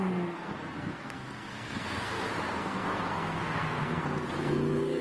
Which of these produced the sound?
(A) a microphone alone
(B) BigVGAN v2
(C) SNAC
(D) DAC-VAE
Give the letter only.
C